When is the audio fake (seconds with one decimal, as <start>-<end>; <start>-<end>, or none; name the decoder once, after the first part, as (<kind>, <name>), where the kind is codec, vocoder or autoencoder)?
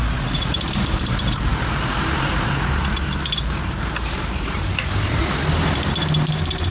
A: 0.0-5.2 (vocoder, BigVGAN v2); 6.3-6.7